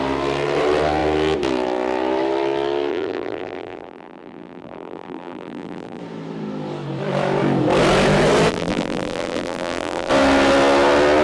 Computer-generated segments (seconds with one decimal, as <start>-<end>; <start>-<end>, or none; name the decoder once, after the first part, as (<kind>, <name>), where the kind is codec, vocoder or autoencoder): 2.9-6.0 (vocoder, BigVGAN v2); 8.5-10.1